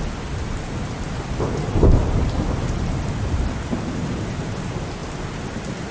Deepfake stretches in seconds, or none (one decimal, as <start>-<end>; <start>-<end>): none